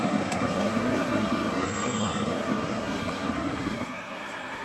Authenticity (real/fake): fake